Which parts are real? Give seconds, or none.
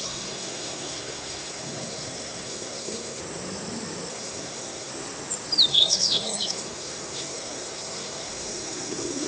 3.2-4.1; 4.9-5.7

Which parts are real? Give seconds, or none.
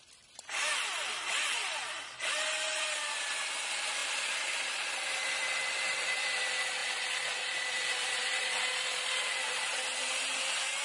4.0-4.9; 6.8-10.8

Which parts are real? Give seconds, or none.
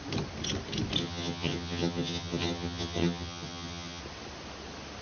0.0-1.0; 4.0-5.0